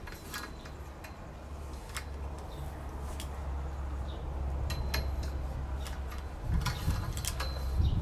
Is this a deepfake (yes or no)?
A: no